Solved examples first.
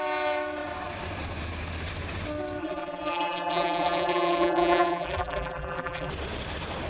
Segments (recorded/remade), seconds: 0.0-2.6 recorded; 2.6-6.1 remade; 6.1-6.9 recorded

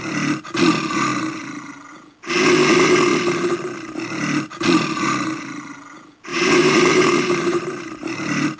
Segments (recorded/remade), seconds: 0.0-6.3 recorded; 6.3-8.6 remade

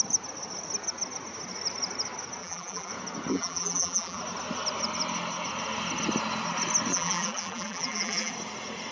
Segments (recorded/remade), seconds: 0.0-2.4 recorded; 2.4-2.9 remade; 2.9-3.3 recorded; 3.3-4.2 remade; 4.2-6.9 recorded; 6.9-8.3 remade; 8.3-8.9 recorded

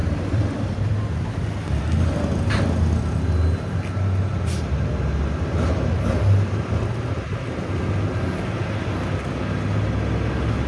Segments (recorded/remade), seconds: 0.0-1.2 remade; 1.2-10.7 recorded